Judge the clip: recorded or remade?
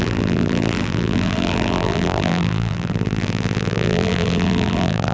remade